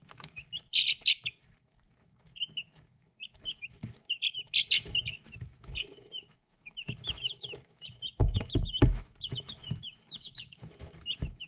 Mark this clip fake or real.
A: fake